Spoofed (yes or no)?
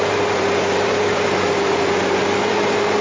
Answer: yes